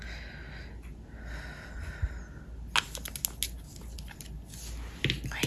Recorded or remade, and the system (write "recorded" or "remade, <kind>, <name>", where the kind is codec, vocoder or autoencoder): recorded